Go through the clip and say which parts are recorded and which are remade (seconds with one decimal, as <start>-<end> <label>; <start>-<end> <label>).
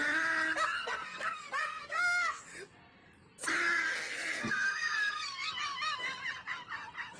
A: 0.0-0.8 recorded; 0.8-2.4 remade; 2.4-3.8 recorded; 3.8-5.5 remade; 5.5-7.2 recorded